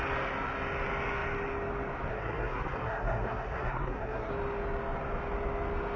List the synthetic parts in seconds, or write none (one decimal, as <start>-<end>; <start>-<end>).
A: 2.1-4.3